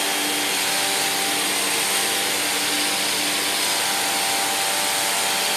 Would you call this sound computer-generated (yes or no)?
no